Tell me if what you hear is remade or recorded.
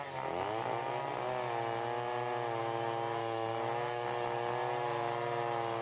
recorded